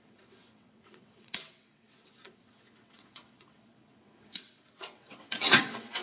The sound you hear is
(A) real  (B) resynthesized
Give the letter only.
B